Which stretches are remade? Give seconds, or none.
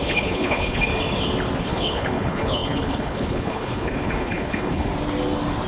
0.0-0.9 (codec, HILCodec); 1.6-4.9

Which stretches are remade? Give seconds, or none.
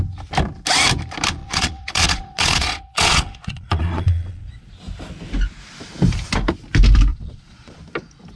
1.4-4.7 (vocoder, Vocos); 7.1-7.8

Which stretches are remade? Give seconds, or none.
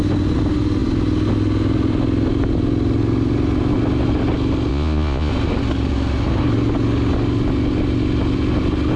4.7-5.3 (vocoder, Vocos)